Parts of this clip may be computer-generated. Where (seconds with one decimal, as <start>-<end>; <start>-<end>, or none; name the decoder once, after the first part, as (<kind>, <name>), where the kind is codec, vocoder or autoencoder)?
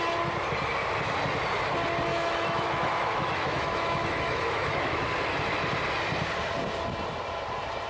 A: 2.1-5.1 (autoencoder, DAC-VAE)